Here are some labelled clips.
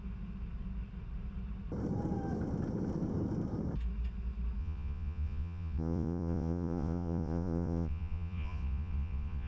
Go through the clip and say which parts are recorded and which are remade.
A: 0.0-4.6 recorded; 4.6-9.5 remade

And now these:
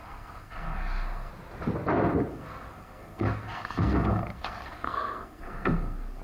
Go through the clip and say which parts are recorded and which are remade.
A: 0.0-1.3 remade; 1.3-2.3 recorded; 2.3-6.2 remade

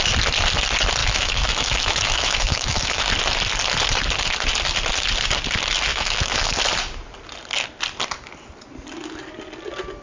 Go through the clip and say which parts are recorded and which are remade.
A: 0.0-1.0 recorded; 1.0-3.1 remade; 3.1-5.9 recorded; 5.9-6.6 remade; 6.6-10.0 recorded

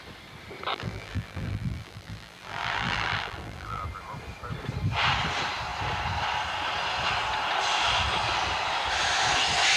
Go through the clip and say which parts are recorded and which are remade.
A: 0.0-0.7 recorded; 0.7-3.8 remade; 3.8-9.8 recorded

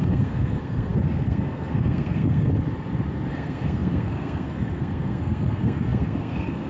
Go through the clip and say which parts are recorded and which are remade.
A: 0.0-2.5 remade; 2.5-3.3 recorded; 3.3-6.7 remade